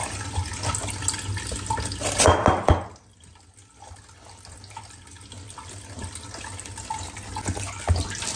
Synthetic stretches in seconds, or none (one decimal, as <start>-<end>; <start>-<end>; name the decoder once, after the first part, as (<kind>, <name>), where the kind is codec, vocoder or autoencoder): none